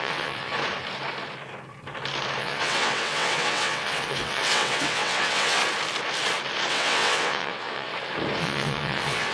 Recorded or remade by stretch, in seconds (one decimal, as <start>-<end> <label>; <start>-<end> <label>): 0.0-0.5 remade; 0.5-2.4 recorded; 2.4-5.6 remade; 5.6-6.7 recorded; 6.7-7.9 remade; 7.9-8.4 recorded; 8.4-9.3 remade